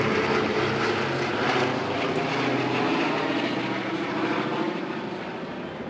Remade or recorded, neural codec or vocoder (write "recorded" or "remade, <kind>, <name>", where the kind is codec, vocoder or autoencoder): recorded